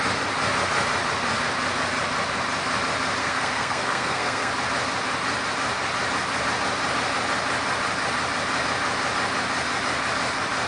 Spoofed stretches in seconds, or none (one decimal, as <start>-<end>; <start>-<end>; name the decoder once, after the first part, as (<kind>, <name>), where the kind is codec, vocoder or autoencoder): 3.2-4.5 (codec, SNAC)